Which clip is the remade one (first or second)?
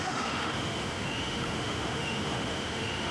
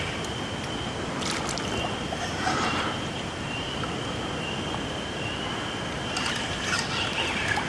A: first